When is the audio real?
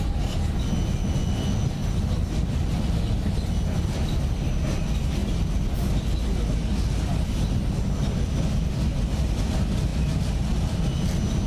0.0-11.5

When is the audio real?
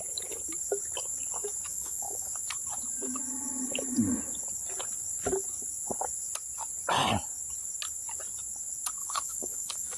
0.0-1.7; 2.3-9.0